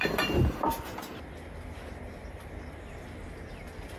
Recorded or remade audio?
recorded